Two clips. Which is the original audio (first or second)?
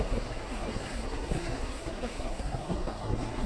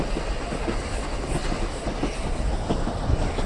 second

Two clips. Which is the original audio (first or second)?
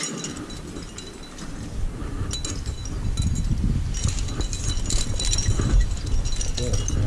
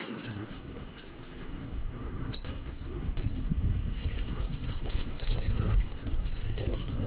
first